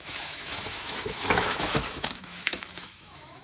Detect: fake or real fake